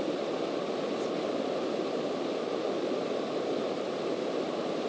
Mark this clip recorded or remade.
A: recorded